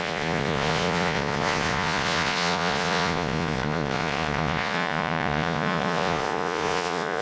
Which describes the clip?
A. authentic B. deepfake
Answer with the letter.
B